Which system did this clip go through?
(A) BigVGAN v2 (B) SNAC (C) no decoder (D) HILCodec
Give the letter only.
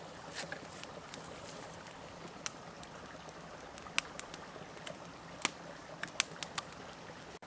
C